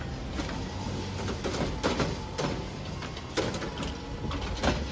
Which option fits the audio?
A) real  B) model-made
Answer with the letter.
A